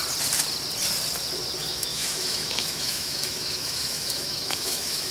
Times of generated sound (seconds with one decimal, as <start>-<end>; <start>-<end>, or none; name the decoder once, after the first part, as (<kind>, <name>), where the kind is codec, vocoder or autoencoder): 1.6-5.1 (autoencoder, DAC-VAE)